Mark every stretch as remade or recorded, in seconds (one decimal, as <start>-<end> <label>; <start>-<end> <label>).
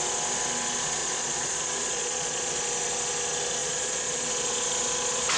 0.0-1.0 recorded; 1.0-2.5 remade; 2.5-3.6 recorded; 3.6-4.3 remade; 4.3-5.4 recorded